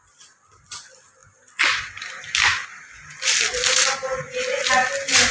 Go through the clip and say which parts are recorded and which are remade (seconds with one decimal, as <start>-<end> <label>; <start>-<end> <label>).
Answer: 0.0-5.3 recorded